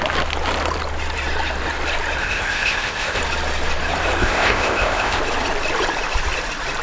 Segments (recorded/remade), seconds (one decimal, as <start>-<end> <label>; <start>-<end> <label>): 0.0-2.2 recorded; 2.2-3.2 remade; 3.2-4.2 recorded; 4.2-5.2 remade; 5.2-6.8 recorded